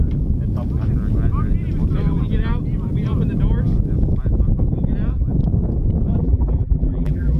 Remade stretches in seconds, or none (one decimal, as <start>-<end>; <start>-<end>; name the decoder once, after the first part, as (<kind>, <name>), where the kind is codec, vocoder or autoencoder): 6.2-7.4 (vocoder, BigVGAN v2)